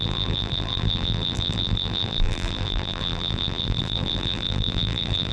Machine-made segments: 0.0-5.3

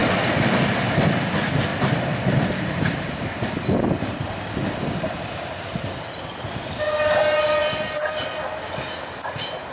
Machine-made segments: 1.7-6.8; 7.6-8.2

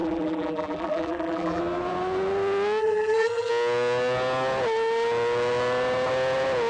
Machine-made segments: 0.0-1.6; 2.8-3.5

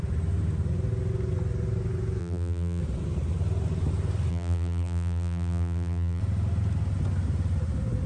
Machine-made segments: 2.2-2.8; 4.3-6.2